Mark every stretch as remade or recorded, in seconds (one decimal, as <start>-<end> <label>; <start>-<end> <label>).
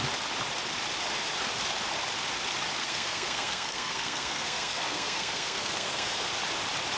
0.0-2.8 recorded; 2.8-6.3 remade; 6.3-7.0 recorded